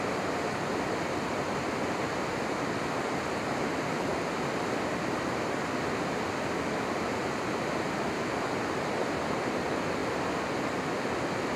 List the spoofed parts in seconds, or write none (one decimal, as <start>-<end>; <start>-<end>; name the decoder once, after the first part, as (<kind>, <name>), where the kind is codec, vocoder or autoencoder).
none